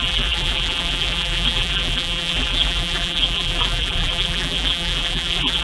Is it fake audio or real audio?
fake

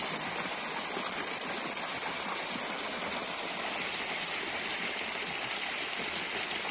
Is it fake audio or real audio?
real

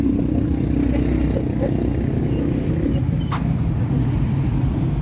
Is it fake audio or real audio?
real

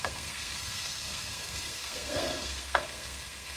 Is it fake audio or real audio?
fake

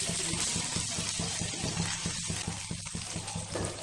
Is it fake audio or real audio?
real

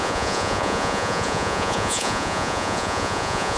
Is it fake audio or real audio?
fake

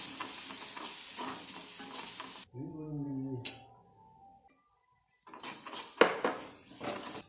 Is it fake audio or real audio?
real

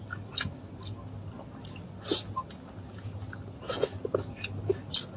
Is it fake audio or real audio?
real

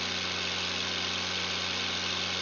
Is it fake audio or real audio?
real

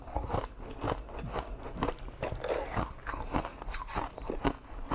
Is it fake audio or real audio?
real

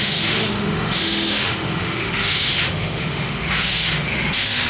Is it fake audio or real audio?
fake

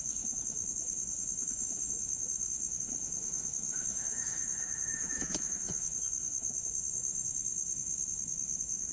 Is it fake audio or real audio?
fake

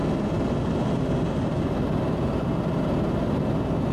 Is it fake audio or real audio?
real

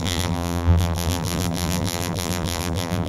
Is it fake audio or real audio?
fake